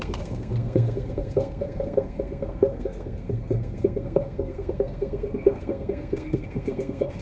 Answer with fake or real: fake